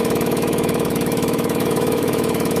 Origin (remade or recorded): remade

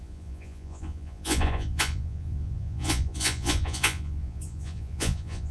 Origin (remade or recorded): remade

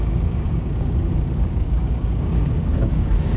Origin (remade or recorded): remade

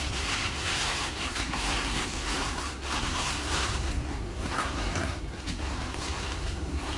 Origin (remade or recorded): remade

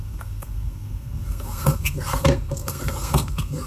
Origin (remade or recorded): remade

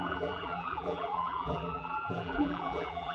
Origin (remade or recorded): remade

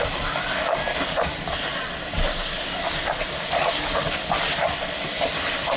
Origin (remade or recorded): recorded